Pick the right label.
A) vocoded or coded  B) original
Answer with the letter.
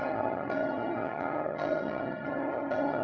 A